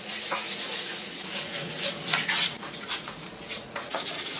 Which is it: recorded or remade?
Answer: remade